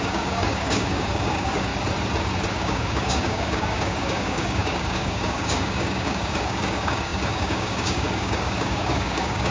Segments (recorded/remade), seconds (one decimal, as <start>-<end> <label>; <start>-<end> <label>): 0.0-1.7 remade; 1.7-2.5 recorded; 2.5-9.5 remade